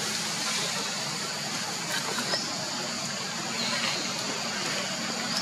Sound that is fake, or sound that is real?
real